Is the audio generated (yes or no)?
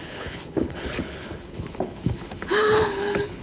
yes